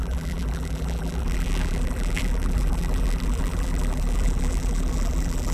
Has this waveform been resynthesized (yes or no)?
yes